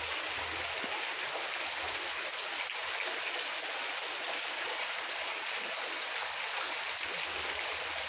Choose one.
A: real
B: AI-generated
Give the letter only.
A